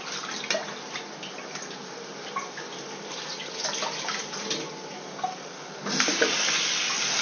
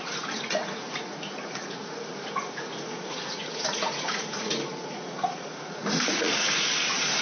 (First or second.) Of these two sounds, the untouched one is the first